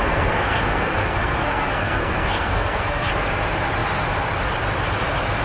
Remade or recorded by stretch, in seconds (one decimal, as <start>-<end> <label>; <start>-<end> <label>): 0.0-3.1 remade; 3.1-5.4 recorded